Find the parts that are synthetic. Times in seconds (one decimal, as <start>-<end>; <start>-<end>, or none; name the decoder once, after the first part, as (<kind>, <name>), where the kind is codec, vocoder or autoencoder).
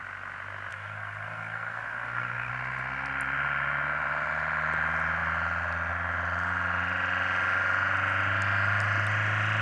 0.7-2.5 (codec, SNAC)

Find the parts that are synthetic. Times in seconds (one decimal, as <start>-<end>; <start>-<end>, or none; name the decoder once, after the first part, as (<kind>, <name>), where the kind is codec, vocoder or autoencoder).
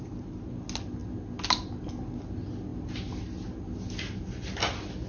none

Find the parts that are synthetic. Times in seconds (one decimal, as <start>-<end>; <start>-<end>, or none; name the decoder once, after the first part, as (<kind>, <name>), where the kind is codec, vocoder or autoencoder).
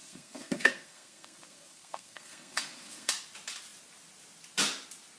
0.0-3.1 (codec, SNAC)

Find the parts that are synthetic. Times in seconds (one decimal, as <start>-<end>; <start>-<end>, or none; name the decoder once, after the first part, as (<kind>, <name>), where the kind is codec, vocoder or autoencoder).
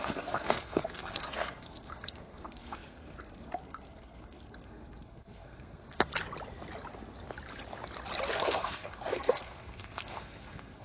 0.0-6.1 (codec, SNAC); 8.3-10.8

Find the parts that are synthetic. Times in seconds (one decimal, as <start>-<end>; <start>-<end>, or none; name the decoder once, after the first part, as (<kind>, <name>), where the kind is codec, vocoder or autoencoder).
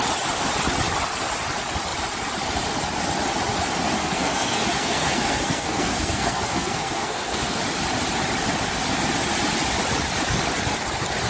4.0-7.6 (codec, SNAC)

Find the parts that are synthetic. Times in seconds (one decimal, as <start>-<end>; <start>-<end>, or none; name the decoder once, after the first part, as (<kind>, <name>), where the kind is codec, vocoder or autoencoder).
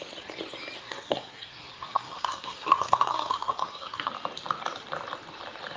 0.8-4.1 (codec, SNAC)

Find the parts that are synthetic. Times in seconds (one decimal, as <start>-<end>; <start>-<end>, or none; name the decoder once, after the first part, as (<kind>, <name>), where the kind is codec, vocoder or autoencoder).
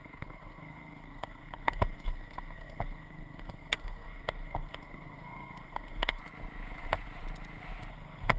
0.0-6.2 (codec, SNAC); 7.9-8.4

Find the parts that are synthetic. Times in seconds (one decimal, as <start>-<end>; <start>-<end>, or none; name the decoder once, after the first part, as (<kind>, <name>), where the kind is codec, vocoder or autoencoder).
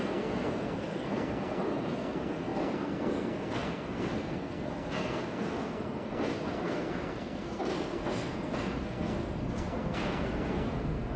0.0-11.2 (codec, SNAC)